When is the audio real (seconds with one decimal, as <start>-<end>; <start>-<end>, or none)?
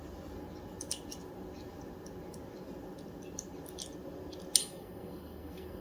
0.0-4.6